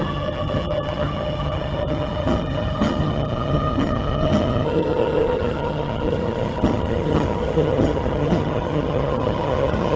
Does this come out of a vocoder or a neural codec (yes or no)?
yes